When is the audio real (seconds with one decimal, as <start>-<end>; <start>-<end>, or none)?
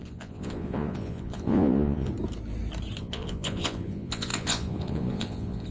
2.1-3.0